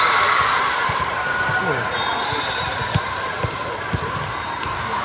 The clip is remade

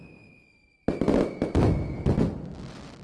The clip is recorded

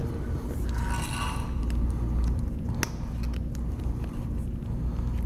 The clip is recorded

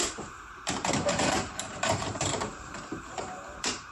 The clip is remade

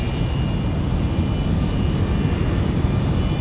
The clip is recorded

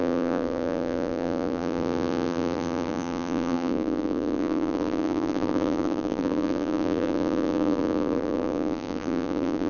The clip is remade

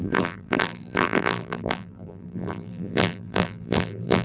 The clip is remade